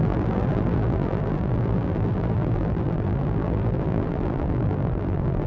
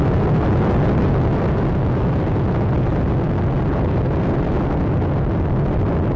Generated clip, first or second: first